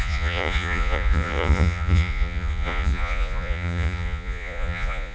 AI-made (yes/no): yes